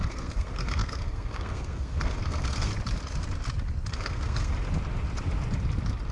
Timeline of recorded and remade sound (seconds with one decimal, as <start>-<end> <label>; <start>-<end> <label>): 0.0-2.7 remade; 2.7-3.9 recorded; 3.9-4.5 remade; 4.5-6.1 recorded